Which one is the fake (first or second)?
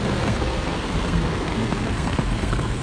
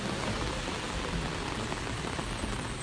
first